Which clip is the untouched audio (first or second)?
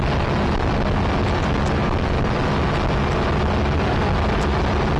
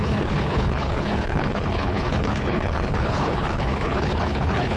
first